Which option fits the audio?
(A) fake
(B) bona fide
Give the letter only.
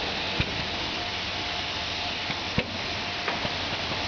B